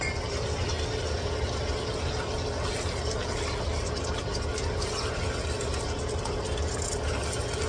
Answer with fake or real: real